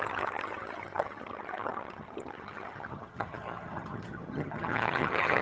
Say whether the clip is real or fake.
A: fake